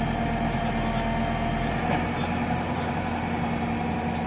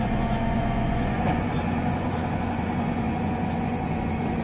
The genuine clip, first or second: first